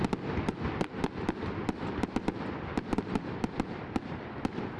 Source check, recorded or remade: recorded